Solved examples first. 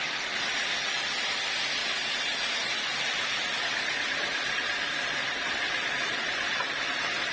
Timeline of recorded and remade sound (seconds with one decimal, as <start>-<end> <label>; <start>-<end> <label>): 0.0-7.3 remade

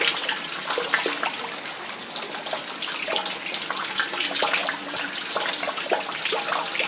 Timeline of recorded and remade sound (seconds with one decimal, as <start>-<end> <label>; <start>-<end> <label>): 0.0-6.9 recorded

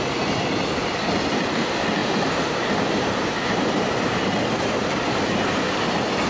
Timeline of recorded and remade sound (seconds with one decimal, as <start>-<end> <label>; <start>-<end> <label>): 0.0-2.0 recorded; 2.0-4.2 remade; 4.2-6.3 recorded

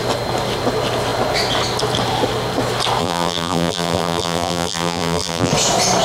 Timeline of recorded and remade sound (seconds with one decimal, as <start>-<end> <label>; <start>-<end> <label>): 0.0-3.0 recorded; 3.0-5.5 remade; 5.5-6.0 recorded

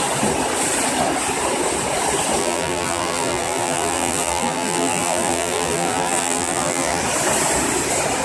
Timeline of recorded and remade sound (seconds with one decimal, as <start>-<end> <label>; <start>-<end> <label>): 0.0-2.4 recorded; 2.4-7.0 remade; 7.0-8.2 recorded